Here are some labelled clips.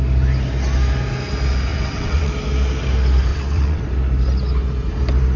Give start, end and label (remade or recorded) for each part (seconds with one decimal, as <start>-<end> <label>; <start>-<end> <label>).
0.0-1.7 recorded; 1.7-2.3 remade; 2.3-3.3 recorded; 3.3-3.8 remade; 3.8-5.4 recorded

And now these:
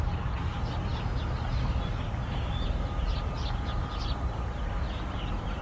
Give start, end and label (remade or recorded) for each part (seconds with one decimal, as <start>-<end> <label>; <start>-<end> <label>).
0.0-5.6 recorded

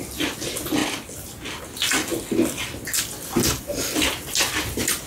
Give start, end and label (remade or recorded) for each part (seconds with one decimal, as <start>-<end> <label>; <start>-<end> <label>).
0.0-5.1 recorded

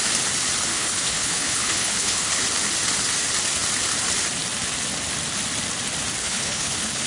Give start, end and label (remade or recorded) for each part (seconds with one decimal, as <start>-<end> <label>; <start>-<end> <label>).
0.0-0.7 recorded; 0.7-2.4 remade; 2.4-6.2 recorded; 6.2-7.1 remade